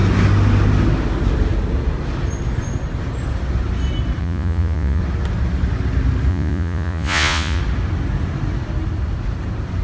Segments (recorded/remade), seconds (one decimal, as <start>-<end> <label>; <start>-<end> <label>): 0.0-4.2 recorded; 4.2-5.0 remade; 5.0-6.3 recorded; 6.3-7.6 remade; 7.6-9.8 recorded